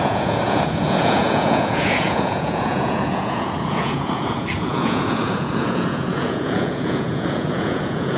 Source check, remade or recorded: remade